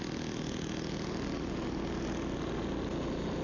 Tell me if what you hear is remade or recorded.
recorded